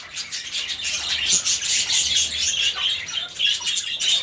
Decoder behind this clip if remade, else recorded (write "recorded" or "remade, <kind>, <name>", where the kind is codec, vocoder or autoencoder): recorded